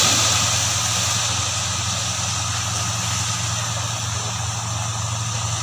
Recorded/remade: recorded